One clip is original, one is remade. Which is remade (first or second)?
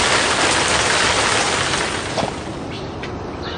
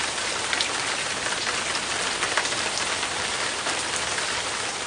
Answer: second